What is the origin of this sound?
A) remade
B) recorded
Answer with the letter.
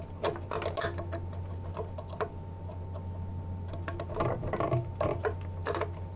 B